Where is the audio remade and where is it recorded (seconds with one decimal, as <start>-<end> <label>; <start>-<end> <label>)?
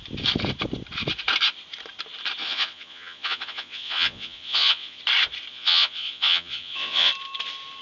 0.0-2.4 recorded; 2.4-5.0 remade; 5.0-5.5 recorded; 5.5-7.1 remade; 7.1-7.8 recorded